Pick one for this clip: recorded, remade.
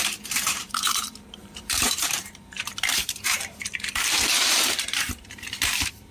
remade